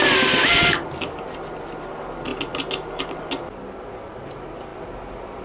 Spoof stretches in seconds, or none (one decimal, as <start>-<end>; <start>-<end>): none